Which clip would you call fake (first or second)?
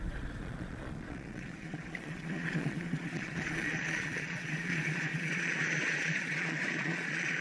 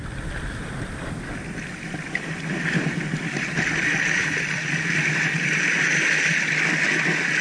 first